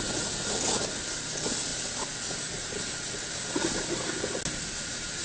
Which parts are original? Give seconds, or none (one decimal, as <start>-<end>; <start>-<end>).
0.0-5.2